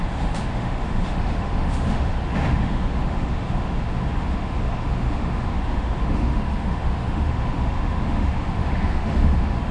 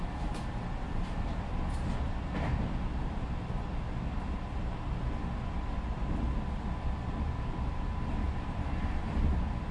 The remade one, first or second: first